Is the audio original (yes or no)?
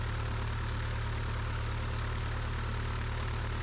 yes